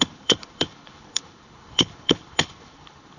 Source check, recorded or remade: remade